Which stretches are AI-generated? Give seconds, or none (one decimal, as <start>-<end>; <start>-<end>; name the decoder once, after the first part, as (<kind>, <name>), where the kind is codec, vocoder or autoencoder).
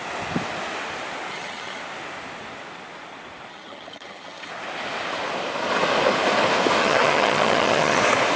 1.3-1.8 (vocoder, HiFi-GAN); 3.5-4.5; 6.8-8.0